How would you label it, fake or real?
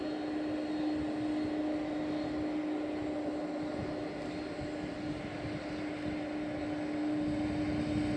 real